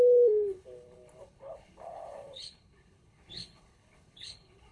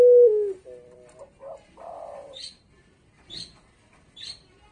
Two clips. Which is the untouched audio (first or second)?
second